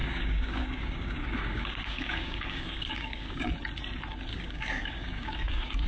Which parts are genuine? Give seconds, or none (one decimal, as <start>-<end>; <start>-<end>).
3.5-4.3